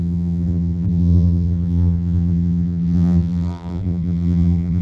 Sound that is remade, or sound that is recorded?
remade